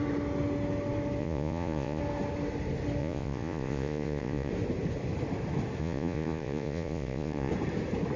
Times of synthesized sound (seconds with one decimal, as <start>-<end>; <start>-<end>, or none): 1.2-2.0; 3.0-4.5; 5.8-7.5